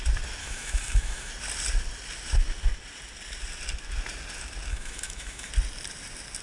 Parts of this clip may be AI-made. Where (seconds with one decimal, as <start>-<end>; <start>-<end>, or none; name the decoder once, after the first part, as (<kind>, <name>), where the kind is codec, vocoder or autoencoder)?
0.4-1.3 (autoencoder, DAC-VAE); 4.7-5.5

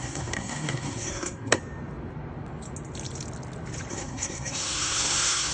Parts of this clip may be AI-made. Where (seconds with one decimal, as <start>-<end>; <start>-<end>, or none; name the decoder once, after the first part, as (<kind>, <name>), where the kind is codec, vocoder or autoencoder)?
0.0-1.6 (codec, SNAC); 3.9-5.5

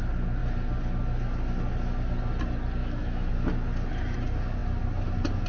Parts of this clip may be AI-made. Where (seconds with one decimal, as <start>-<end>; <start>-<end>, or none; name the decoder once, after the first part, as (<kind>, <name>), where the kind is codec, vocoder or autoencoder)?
2.8-3.3 (autoencoder, DAC-VAE)

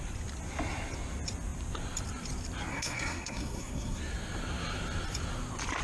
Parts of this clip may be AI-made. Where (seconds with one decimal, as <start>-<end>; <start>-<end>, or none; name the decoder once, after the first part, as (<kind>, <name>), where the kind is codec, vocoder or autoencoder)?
2.7-4.0 (codec, SNAC)